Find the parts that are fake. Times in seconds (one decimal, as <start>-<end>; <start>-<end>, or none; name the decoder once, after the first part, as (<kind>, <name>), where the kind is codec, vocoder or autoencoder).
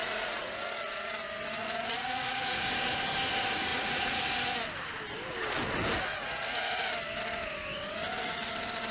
0.0-1.1 (vocoder, Vocos); 1.6-2.7; 3.7-4.2; 6.1-6.9